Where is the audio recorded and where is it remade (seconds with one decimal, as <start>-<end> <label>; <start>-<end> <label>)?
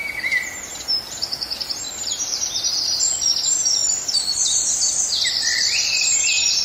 0.0-1.1 recorded; 1.1-6.6 remade